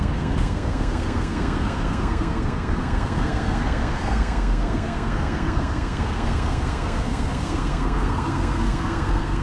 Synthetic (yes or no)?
yes